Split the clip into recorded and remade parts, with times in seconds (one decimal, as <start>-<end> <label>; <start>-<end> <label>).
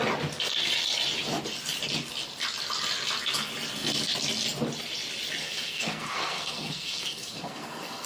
0.0-5.4 recorded; 5.4-8.1 remade